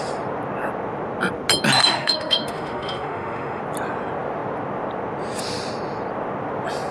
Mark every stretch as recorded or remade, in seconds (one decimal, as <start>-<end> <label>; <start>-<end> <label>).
0.0-1.8 recorded; 1.8-3.6 remade; 3.6-6.9 recorded